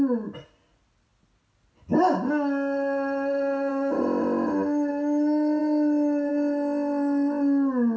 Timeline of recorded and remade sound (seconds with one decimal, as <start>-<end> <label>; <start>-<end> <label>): 0.0-8.0 recorded